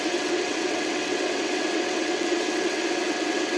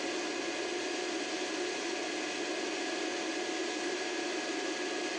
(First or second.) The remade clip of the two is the first